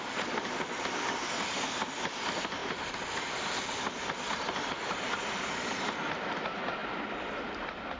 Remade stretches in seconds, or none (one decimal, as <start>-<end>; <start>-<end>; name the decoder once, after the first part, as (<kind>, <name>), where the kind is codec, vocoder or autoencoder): none